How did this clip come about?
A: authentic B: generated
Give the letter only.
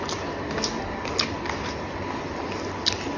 A